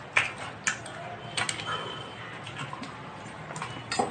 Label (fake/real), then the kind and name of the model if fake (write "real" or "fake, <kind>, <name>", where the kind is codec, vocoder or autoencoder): real